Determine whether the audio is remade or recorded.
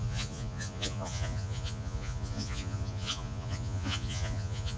remade